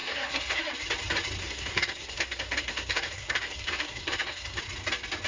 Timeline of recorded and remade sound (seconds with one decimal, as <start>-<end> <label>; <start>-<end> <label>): 0.0-0.6 remade; 0.6-1.4 recorded; 1.4-4.6 remade; 4.6-5.3 recorded

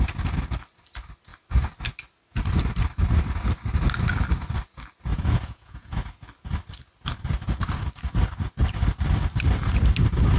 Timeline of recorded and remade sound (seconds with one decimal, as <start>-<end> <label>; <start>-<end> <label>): 0.0-5.1 recorded; 5.1-6.0 remade; 6.0-10.4 recorded